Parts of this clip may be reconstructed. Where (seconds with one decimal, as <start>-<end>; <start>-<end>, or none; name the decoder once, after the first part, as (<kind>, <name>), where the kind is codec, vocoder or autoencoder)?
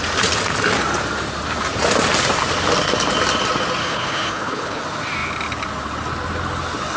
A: 3.8-4.8 (codec, HILCodec)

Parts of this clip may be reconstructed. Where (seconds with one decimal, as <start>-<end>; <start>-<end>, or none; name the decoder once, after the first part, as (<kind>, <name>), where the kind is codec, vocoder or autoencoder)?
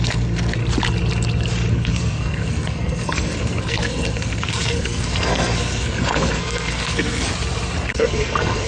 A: 0.0-0.6 (codec, SNAC); 1.7-7.3; 7.9-8.7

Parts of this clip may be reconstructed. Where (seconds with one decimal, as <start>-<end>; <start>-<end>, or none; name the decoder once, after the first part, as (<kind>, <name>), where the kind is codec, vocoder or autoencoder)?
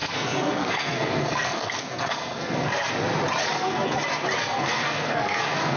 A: 0.0-2.9 (codec, SNAC); 3.4-4.0; 4.4-5.8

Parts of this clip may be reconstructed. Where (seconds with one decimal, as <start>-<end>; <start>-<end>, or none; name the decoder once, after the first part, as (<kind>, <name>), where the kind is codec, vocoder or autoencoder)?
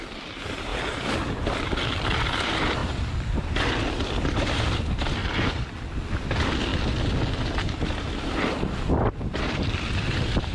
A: 0.0-5.2 (vocoder, BigVGAN v2); 6.1-6.7; 7.5-10.5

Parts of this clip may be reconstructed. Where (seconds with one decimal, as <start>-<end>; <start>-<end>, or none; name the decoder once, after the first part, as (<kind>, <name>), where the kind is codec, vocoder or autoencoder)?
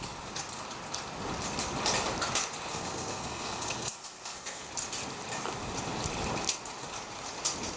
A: 2.7-4.7 (codec, SNAC)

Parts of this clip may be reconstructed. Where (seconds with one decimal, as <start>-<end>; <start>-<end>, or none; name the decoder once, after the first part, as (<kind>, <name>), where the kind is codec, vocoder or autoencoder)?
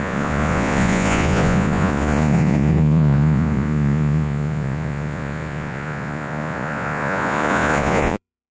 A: 0.0-8.5 (vocoder, Vocos)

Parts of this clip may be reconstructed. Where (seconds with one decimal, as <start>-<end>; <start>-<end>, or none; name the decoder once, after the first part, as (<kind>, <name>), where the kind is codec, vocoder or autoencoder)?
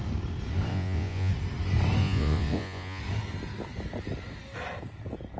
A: 0.7-1.3 (vocoder, Vocos); 2.0-3.0